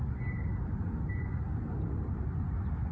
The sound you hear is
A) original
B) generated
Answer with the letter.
A